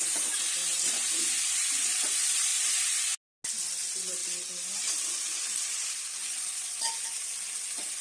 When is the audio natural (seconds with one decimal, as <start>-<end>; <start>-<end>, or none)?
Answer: 0.0-0.6; 1.2-8.0